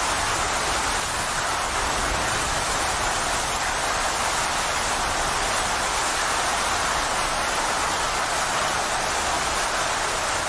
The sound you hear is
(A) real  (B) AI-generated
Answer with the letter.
A